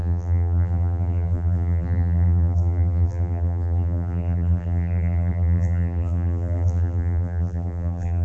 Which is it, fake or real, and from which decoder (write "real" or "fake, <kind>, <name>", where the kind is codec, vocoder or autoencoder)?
fake, vocoder, BigVGAN v2